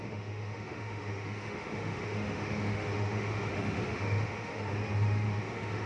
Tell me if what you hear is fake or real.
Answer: fake